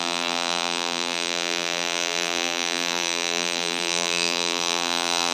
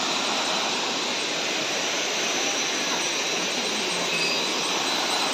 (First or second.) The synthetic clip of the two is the first